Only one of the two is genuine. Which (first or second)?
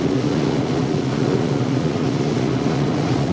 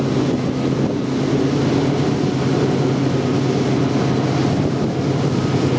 second